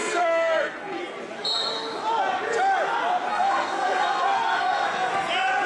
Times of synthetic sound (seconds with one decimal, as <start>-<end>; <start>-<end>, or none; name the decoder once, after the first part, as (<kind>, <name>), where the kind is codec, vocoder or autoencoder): 0.0-1.0 (codec, SNAC); 3.3-5.1